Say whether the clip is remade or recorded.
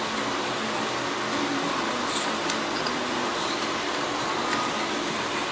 recorded